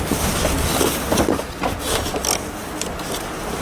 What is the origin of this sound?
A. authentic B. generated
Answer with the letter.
A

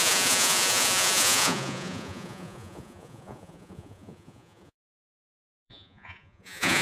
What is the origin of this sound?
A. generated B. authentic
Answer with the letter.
A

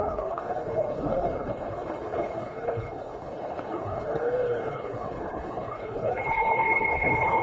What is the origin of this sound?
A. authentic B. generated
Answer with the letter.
B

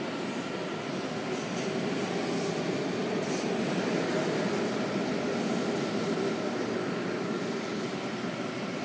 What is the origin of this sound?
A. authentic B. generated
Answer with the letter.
A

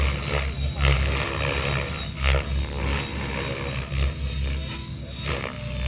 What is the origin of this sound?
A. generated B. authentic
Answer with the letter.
B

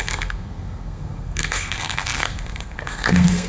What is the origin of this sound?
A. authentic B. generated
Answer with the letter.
B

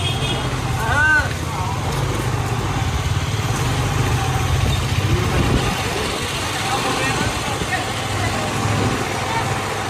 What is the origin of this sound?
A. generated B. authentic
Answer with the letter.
B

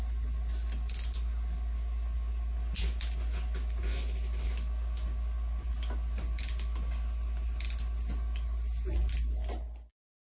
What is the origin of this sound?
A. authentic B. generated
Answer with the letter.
A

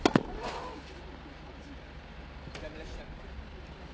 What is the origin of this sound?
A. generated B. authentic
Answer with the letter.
B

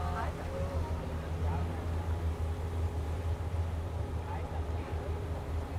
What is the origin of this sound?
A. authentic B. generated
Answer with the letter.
A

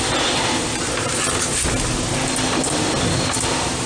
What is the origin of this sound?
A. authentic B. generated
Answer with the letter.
A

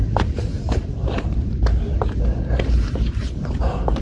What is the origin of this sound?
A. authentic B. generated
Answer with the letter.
B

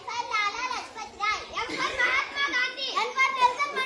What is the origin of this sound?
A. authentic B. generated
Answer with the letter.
A